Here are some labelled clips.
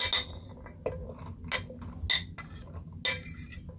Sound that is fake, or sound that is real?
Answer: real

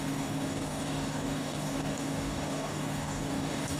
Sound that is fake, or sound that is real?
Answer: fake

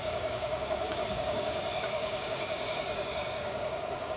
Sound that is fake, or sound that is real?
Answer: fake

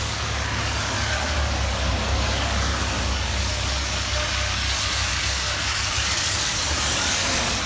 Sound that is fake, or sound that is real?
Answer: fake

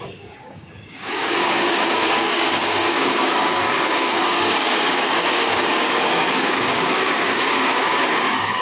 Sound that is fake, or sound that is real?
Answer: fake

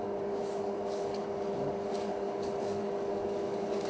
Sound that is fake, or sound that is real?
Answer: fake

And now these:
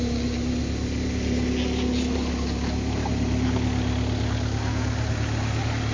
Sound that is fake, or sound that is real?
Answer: real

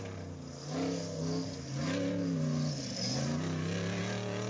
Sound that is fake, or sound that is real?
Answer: real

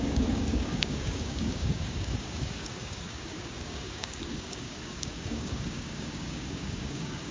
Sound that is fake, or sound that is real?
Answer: fake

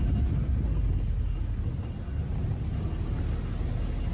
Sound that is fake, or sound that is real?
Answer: real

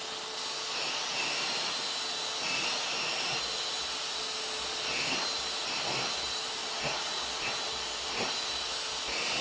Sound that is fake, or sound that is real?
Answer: real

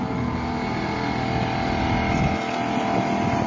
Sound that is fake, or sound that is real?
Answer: real